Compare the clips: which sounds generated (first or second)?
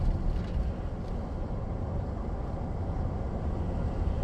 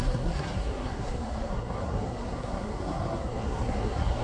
second